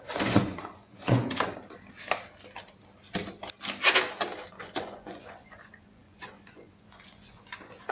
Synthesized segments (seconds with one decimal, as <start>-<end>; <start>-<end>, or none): 0.0-1.5; 4.5-7.9